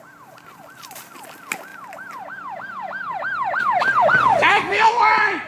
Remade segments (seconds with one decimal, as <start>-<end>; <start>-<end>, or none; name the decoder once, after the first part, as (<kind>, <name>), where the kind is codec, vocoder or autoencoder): 4.5-5.0 (autoencoder, DAC-VAE)